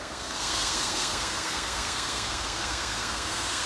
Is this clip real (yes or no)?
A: no